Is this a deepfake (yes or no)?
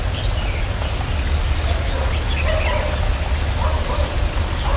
no